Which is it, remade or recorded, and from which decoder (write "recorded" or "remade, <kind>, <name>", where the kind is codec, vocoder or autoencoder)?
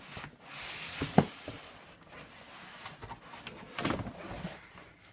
recorded